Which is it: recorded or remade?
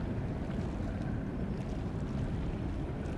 recorded